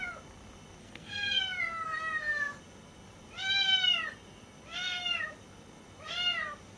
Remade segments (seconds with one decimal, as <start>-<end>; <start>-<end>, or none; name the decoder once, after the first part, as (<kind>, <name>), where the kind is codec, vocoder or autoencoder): 0.8-1.4 (codec, SNAC)